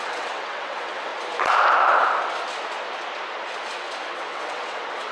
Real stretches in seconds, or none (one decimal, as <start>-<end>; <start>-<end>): 1.1-4.1